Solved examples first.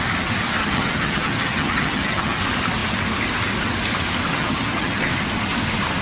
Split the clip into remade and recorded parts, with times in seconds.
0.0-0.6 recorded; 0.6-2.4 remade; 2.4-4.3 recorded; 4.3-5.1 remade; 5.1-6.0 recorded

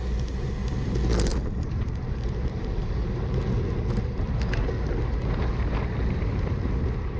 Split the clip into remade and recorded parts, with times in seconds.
0.0-1.3 recorded; 1.3-3.4 remade; 3.4-7.2 recorded

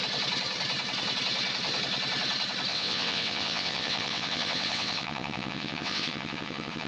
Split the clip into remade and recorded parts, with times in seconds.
0.0-2.7 recorded; 2.7-6.9 remade